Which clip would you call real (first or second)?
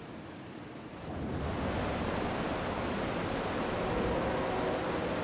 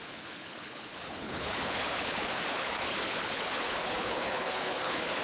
first